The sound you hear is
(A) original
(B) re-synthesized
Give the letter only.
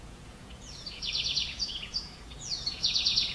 B